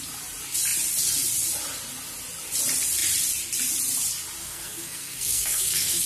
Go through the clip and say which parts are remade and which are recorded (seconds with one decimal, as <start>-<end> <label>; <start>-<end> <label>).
0.0-4.4 recorded; 4.4-6.1 remade